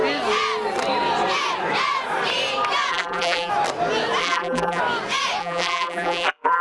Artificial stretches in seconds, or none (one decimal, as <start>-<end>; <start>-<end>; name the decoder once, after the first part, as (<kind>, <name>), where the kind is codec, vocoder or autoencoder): 2.9-3.5 (vocoder, BigVGAN v2); 4.2-4.8; 5.4-6.6

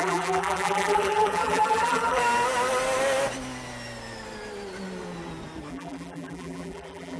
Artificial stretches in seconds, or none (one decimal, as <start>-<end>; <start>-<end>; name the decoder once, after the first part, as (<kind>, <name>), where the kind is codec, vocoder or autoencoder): 0.0-2.2 (vocoder, BigVGAN v2); 5.7-7.2

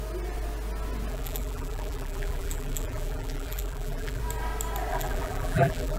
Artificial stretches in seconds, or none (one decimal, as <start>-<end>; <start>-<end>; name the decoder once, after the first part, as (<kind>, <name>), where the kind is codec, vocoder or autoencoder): 1.1-4.2 (vocoder, BigVGAN v2); 4.9-6.0

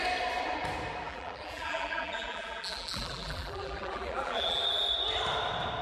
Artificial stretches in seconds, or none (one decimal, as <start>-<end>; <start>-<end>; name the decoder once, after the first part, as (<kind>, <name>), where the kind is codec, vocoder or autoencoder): 1.1-4.6 (vocoder, BigVGAN v2)

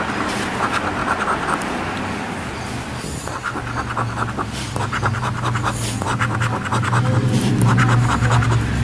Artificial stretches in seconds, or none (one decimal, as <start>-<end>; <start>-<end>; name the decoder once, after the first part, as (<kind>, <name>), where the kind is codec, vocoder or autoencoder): 1.0-2.3 (vocoder, BigVGAN v2); 6.7-7.8

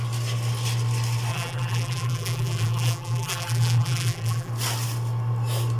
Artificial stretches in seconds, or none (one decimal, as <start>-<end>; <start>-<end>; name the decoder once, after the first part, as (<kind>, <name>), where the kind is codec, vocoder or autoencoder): 1.3-4.5 (vocoder, BigVGAN v2)